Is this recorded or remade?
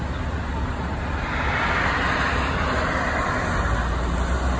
recorded